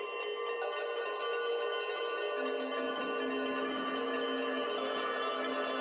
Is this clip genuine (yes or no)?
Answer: yes